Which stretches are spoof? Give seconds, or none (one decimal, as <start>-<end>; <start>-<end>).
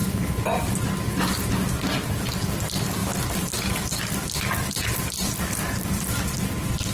0.0-0.9; 3.0-6.4